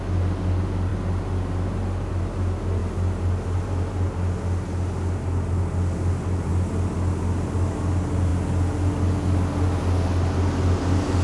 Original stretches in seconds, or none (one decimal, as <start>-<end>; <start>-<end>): 0.0-11.2